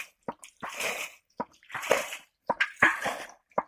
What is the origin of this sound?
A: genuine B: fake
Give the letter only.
B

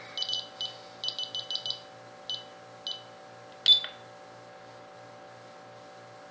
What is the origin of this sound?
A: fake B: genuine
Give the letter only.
B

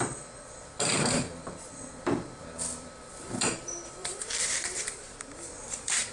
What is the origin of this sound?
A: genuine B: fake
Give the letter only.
B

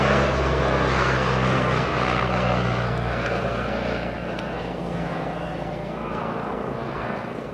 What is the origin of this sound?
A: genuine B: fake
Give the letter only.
B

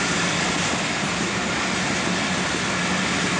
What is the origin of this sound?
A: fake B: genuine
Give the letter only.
B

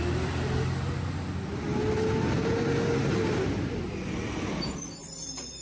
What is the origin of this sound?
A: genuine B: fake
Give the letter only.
A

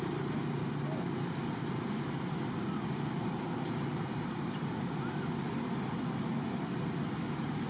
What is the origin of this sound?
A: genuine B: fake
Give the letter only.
A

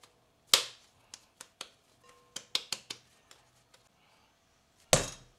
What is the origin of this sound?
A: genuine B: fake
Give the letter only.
A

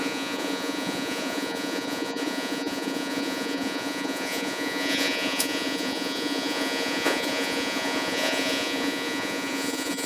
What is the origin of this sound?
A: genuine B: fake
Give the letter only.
B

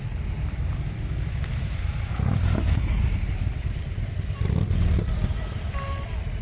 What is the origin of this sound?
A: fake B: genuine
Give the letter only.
A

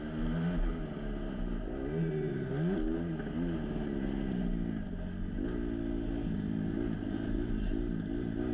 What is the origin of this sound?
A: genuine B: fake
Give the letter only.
A